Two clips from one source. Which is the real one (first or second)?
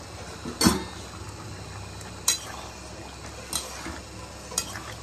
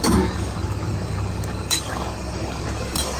first